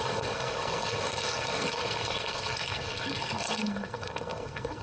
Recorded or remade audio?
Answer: remade